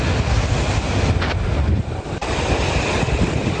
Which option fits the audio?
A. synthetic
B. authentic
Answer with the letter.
B